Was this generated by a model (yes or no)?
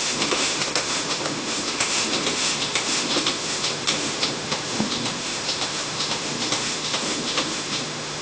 yes